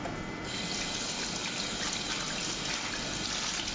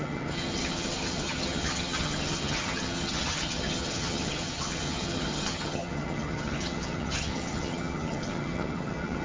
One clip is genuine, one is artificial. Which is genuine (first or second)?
first